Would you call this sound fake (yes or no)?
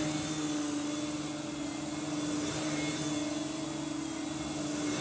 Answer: no